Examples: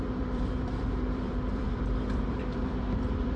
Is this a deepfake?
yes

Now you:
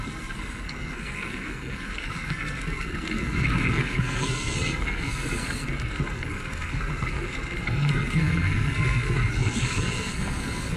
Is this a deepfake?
yes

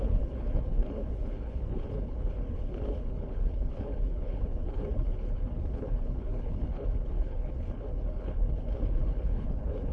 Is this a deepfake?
yes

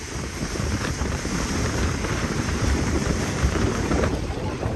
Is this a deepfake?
yes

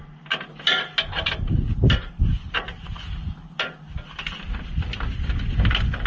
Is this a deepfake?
no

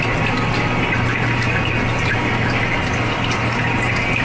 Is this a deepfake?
no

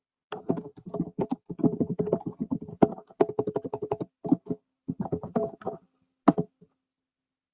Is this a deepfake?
no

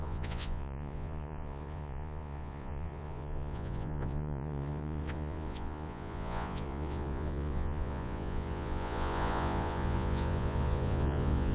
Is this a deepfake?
yes